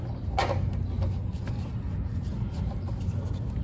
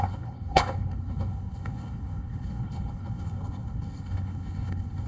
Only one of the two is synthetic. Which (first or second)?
second